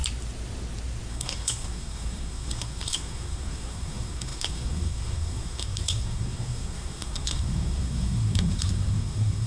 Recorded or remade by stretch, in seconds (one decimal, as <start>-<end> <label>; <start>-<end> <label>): 0.0-1.1 recorded; 1.1-9.5 remade